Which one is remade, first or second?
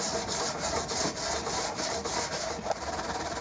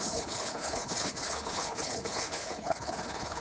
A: second